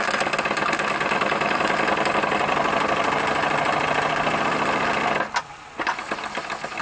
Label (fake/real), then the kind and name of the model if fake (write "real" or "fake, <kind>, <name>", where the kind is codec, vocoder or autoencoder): real